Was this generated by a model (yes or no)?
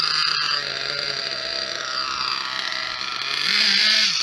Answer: no